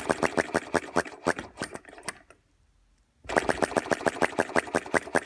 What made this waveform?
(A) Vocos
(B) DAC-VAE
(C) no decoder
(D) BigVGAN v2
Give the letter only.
C